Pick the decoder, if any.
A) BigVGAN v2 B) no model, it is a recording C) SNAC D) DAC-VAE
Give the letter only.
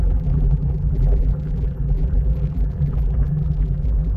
A